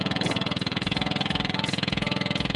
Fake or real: fake